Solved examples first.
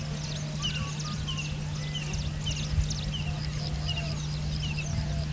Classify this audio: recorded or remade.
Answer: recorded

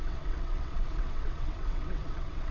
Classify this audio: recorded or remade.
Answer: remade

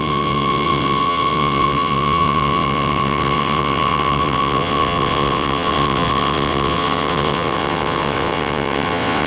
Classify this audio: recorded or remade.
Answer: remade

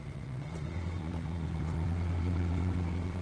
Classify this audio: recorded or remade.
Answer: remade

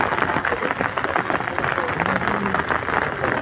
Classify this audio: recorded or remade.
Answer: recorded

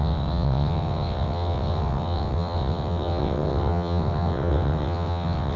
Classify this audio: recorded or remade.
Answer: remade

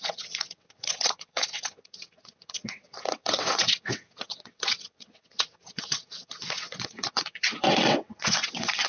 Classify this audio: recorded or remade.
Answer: remade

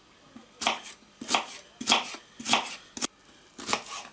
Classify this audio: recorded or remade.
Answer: recorded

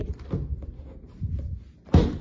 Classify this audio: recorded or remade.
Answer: recorded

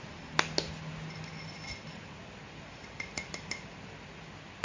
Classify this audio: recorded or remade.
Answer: recorded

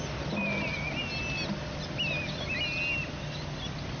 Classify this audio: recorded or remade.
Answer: recorded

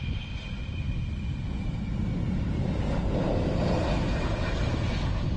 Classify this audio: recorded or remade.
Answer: recorded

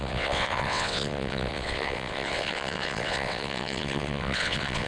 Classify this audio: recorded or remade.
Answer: remade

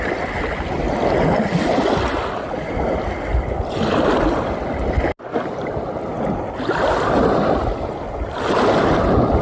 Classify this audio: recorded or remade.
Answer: recorded